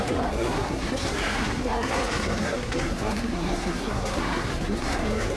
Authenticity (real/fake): fake